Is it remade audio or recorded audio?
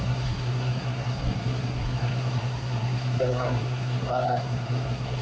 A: remade